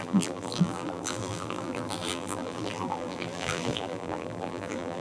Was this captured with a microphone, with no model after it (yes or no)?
no